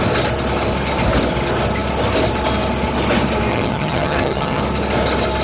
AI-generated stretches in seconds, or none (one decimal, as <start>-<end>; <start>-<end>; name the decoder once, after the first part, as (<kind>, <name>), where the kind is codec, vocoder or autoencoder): 3.5-4.6 (vocoder, HiFi-GAN)

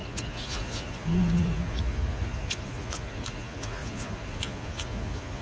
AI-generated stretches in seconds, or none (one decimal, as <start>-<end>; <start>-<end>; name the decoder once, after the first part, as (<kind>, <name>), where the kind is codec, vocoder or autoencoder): 0.0-5.4 (vocoder, Vocos)

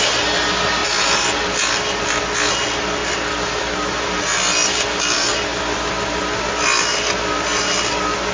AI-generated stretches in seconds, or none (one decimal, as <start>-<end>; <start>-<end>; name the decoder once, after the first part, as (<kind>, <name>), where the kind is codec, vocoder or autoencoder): none

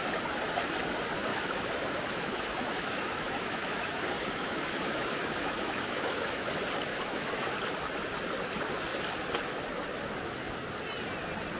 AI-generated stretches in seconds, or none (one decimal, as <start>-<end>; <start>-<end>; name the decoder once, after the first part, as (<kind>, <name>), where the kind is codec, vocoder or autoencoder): 1.3-6.5 (autoencoder, DAC-VAE); 6.9-7.5

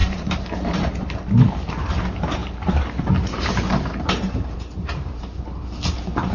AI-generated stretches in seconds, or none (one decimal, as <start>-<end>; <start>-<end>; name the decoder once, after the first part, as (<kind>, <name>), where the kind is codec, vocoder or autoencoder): 0.0-0.8 (vocoder, BigVGAN v2); 2.4-5.4

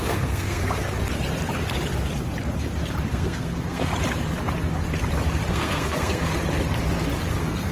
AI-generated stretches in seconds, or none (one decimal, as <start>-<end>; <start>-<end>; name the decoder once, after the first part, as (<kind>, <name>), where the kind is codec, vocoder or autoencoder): 0.0-0.6 (codec, SNAC); 3.1-3.9; 5.5-6.3; 7.3-7.7